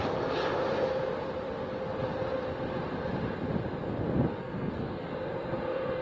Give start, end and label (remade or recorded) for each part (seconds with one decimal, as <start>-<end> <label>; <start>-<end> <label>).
0.0-4.3 recorded; 4.3-5.1 remade; 5.1-6.0 recorded